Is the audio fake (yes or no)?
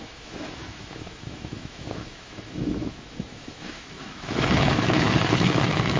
yes